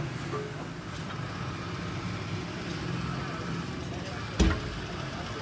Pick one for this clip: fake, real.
real